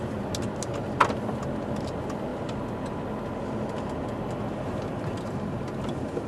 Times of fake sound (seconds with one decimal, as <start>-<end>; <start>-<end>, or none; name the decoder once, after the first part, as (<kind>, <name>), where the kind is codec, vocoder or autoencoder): none